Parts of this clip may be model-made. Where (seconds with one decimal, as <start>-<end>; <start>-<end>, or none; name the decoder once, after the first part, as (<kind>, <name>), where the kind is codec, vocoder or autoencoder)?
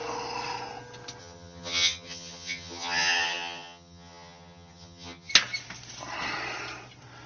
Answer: 1.2-5.3 (vocoder, HiFi-GAN)